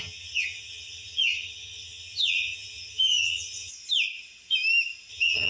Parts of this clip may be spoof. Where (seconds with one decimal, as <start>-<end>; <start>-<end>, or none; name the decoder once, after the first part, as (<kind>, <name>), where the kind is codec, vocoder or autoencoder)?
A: 0.0-3.7 (vocoder, HiFi-GAN); 5.1-5.5